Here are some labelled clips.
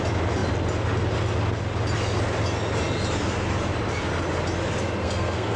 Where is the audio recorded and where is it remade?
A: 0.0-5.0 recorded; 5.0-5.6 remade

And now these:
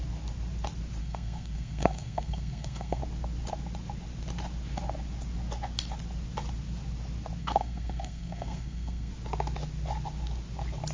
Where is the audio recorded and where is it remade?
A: 0.0-1.0 recorded; 1.0-3.0 remade; 3.0-7.4 recorded; 7.4-9.1 remade; 9.1-10.9 recorded

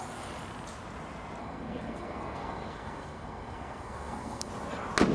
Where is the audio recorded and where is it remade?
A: 0.0-1.4 recorded; 1.4-4.5 remade; 4.5-5.1 recorded

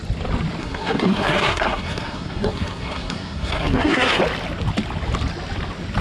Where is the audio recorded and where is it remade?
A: 0.0-0.6 recorded; 0.6-4.2 remade; 4.2-6.0 recorded

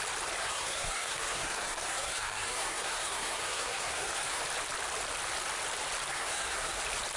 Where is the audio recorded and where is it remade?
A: 0.0-0.4 recorded; 0.4-4.4 remade; 4.4-6.1 recorded; 6.1-6.8 remade; 6.8-7.2 recorded

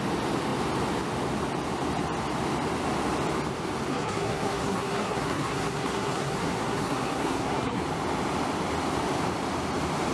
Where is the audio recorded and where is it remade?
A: 0.0-3.9 recorded; 3.9-7.8 remade; 7.8-10.1 recorded